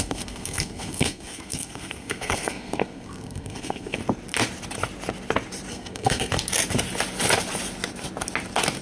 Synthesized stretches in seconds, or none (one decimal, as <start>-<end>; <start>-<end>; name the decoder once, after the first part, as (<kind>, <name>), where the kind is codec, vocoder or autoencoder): 0.0-4.0 (codec, SNAC); 5.7-6.3